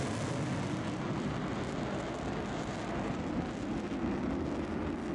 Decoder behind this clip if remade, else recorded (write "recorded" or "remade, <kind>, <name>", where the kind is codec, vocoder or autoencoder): recorded